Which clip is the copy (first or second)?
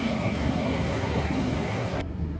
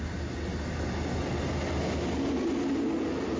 first